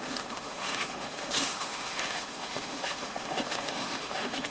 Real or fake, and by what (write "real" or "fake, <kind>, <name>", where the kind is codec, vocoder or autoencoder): fake, autoencoder, DAC-VAE